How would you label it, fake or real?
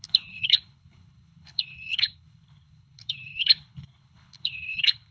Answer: fake